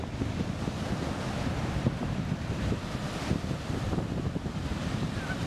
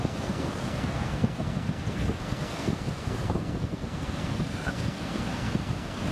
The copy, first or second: second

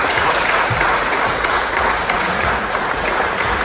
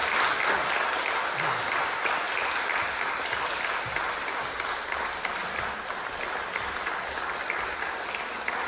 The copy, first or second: first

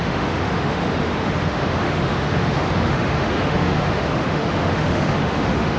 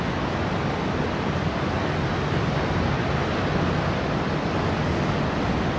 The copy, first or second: first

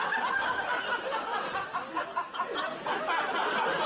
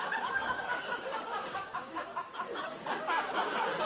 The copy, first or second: second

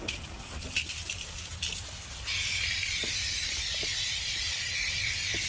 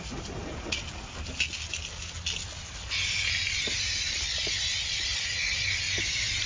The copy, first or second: first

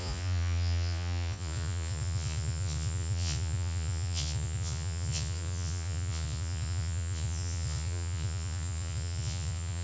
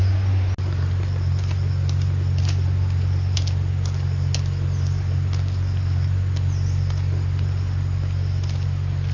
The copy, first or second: first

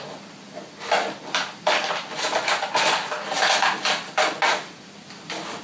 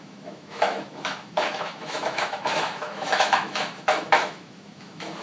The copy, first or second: second